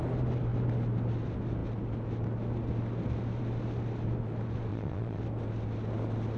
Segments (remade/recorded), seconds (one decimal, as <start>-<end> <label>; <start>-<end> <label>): 0.0-4.7 recorded; 4.7-5.2 remade; 5.2-6.4 recorded